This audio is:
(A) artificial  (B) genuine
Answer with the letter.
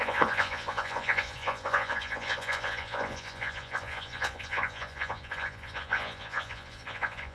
A